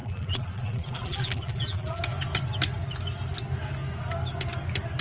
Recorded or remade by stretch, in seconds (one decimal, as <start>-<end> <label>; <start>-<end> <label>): 0.0-2.0 remade; 2.0-5.0 recorded